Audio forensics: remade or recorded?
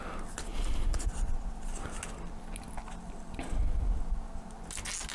recorded